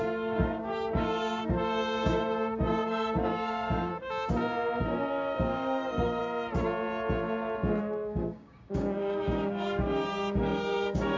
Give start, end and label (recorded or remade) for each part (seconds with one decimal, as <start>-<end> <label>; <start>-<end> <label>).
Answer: 0.0-3.9 remade; 3.9-4.8 recorded; 4.8-6.2 remade; 6.2-7.8 recorded; 7.8-11.2 remade